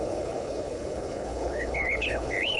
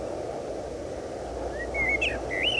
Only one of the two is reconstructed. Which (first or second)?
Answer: first